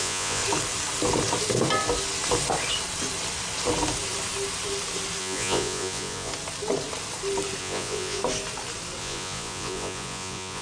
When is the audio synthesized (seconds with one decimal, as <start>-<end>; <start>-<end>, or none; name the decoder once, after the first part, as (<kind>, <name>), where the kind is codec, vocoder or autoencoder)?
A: 0.0-0.4 (vocoder, Vocos); 5.2-6.3; 7.6-8.2; 9.0-10.6